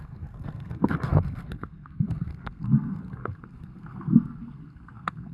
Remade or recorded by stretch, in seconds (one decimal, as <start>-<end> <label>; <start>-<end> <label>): 0.0-5.3 remade